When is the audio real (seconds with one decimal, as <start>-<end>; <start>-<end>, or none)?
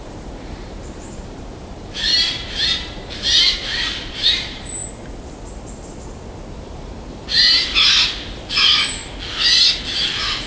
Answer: 4.8-6.5; 9.0-10.5